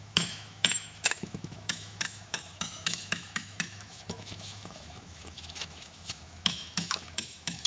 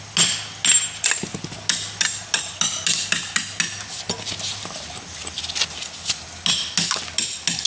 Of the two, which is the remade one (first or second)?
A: first